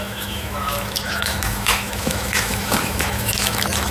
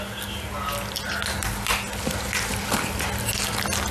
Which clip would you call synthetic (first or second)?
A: first